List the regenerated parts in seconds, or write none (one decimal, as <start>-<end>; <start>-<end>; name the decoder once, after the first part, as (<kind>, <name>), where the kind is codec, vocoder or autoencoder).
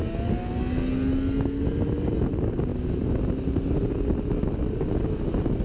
none